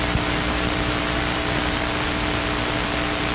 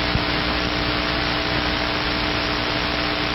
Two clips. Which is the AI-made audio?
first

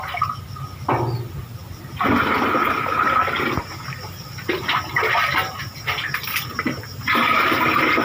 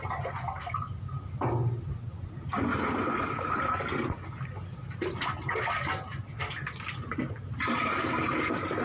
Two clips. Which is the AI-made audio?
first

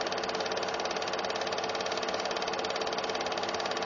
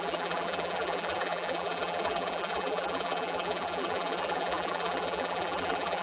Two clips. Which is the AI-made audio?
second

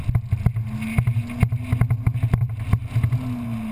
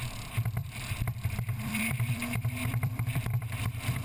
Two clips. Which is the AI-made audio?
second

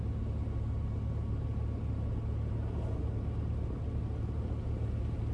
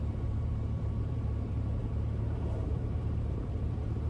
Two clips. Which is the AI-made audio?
second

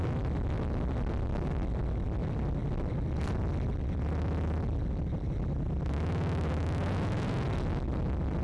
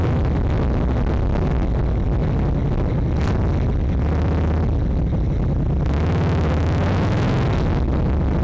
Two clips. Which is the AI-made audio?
first